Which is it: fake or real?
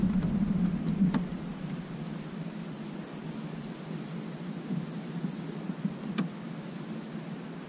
real